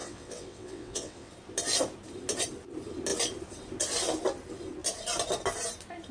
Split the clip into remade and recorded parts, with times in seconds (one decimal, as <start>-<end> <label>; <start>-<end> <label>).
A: 0.0-1.3 remade; 1.3-6.1 recorded